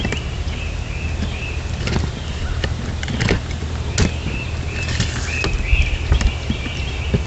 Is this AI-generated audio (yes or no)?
no